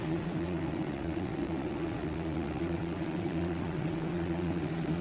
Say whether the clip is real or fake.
fake